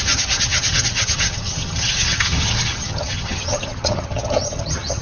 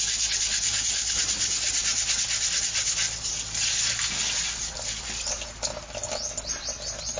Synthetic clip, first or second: first